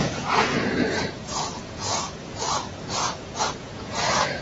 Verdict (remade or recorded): remade